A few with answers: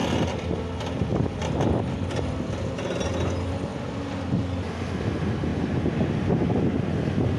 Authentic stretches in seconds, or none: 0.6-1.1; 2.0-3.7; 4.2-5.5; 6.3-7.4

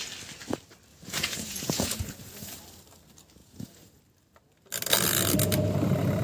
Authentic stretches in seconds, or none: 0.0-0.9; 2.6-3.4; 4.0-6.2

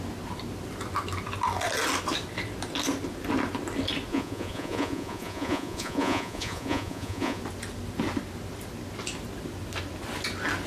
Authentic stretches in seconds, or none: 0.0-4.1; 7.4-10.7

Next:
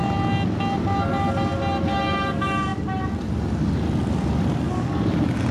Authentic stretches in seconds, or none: 0.0-5.5